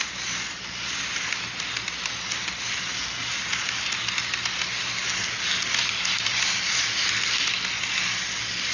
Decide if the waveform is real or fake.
real